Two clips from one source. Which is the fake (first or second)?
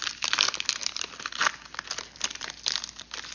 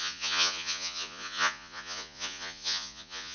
second